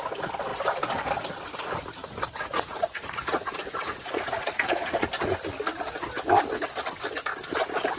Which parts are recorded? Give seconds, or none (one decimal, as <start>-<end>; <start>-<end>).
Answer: 0.0-2.0; 5.1-8.0